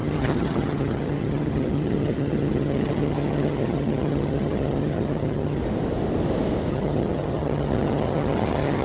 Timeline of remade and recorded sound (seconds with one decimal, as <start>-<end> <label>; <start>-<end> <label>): 0.0-5.6 remade; 5.6-6.7 recorded; 6.7-8.8 remade